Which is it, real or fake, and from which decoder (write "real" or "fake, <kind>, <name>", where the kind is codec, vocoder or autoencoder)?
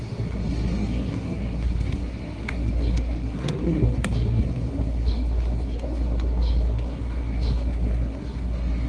fake, codec, SNAC